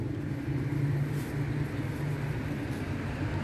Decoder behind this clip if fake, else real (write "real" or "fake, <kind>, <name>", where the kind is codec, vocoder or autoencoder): real